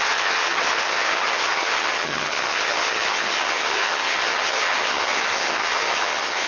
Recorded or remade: remade